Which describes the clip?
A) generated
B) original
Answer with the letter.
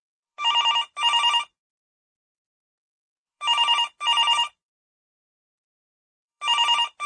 A